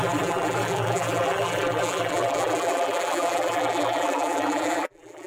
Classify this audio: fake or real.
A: fake